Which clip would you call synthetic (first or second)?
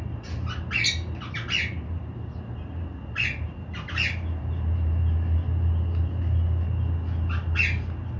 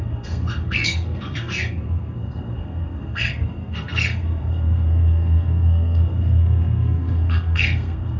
second